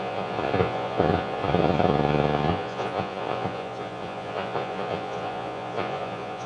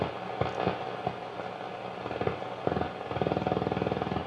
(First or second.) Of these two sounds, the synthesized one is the first